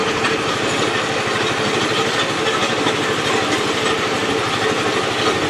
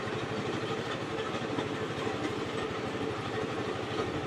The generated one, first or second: second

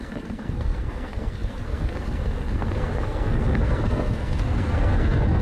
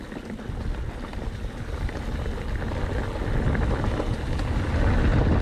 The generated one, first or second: first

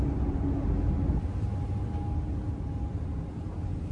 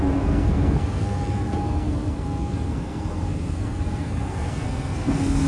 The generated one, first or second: second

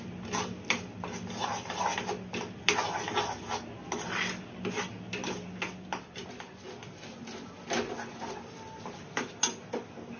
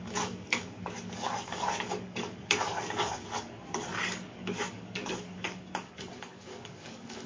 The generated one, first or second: second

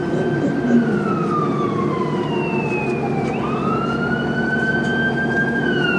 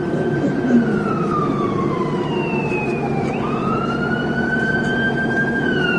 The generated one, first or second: second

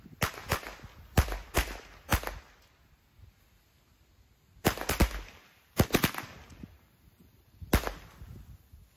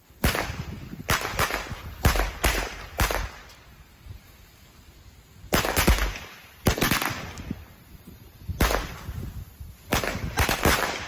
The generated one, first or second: second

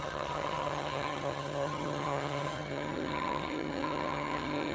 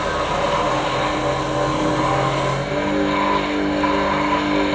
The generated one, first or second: first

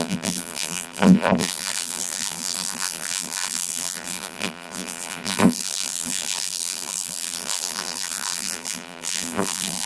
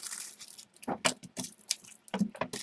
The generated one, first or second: first